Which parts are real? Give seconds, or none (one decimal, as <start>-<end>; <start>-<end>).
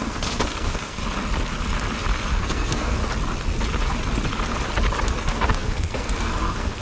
1.0-2.3; 3.0-5.1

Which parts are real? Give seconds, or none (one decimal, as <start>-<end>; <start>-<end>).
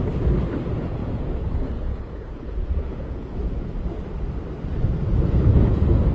0.0-1.0; 3.7-6.1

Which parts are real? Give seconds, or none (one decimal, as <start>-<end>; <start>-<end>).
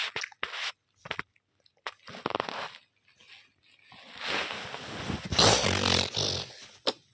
0.0-7.1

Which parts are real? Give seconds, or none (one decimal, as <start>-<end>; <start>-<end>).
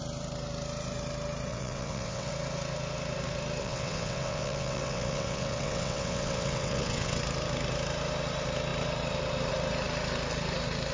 0.0-1.5; 2.3-3.6; 7.2-10.9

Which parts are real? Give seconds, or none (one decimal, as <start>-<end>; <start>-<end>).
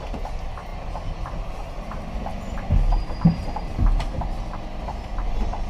0.0-5.7